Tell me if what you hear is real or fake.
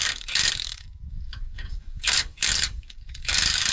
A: fake